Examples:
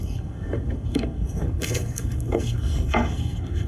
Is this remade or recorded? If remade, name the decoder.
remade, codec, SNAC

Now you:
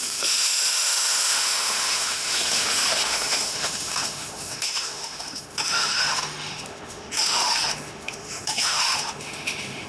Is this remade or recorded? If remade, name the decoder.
remade, autoencoder, DAC-VAE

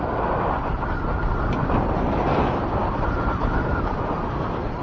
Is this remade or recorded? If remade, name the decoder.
recorded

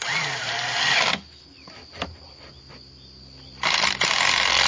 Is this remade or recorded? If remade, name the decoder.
recorded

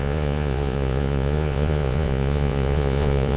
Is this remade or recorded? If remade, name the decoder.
remade, vocoder, Vocos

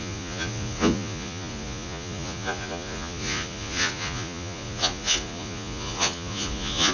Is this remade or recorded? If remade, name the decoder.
remade, vocoder, Vocos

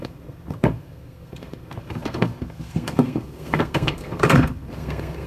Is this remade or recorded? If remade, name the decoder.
remade, codec, SNAC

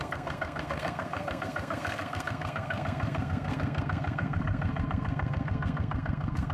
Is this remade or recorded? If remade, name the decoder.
remade, codec, SNAC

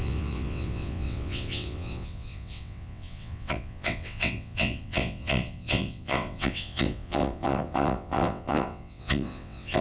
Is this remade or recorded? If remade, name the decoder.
remade, vocoder, WaveNeXt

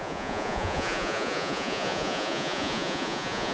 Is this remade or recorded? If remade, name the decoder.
remade, vocoder, Vocos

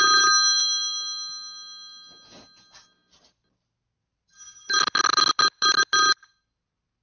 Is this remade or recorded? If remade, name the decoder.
recorded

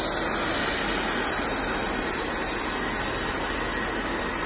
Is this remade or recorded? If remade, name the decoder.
recorded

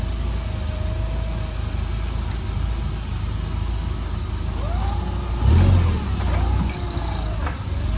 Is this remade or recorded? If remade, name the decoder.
recorded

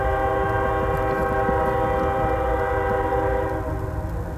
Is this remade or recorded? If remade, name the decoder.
recorded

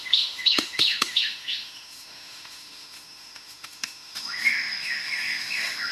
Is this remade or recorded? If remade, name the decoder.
remade, autoencoder, DAC-VAE